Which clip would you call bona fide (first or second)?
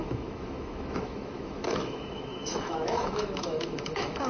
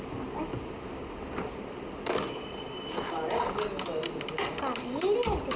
second